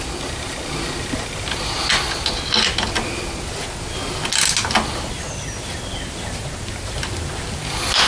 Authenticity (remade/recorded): recorded